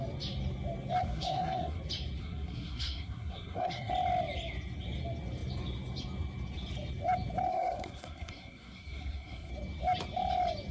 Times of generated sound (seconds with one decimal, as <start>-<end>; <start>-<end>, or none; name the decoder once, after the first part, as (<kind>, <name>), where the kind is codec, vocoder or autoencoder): 1.0-1.8 (codec, SNAC); 2.2-3.9; 7.5-9.5